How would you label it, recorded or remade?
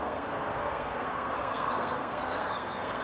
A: remade